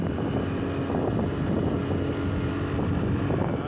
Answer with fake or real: real